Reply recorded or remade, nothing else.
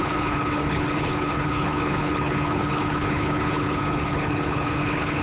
remade